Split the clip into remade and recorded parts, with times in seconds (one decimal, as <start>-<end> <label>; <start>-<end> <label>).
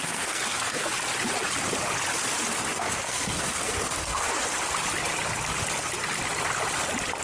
0.0-0.9 remade; 0.9-2.7 recorded; 2.7-4.3 remade; 4.3-7.2 recorded